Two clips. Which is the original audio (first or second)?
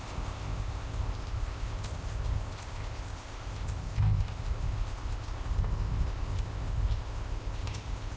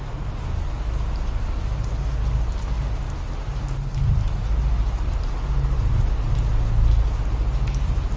second